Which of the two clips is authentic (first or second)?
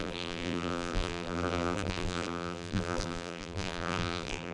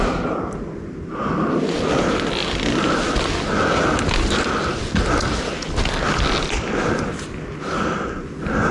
second